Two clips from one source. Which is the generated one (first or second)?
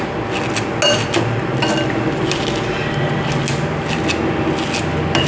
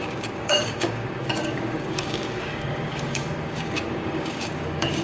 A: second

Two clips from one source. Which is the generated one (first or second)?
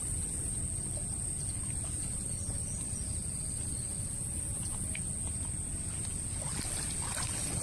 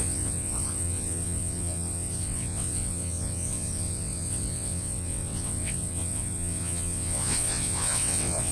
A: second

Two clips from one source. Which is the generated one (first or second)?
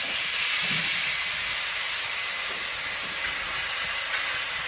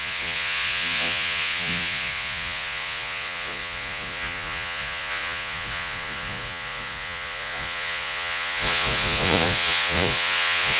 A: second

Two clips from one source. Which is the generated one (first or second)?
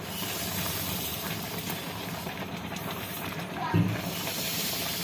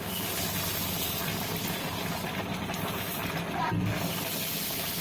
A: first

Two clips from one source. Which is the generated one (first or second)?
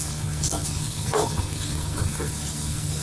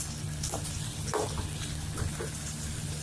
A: first